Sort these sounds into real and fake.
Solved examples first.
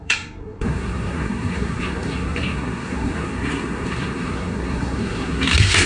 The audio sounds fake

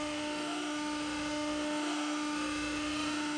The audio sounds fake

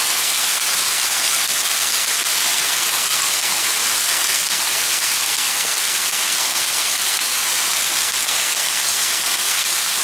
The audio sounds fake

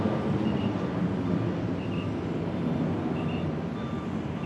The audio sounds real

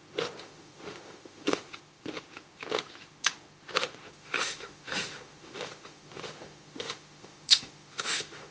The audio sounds fake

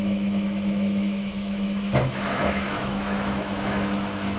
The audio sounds fake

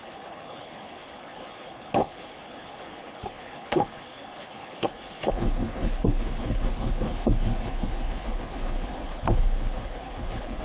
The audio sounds fake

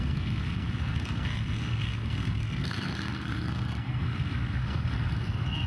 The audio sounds fake